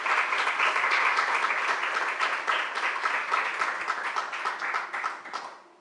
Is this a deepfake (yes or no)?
no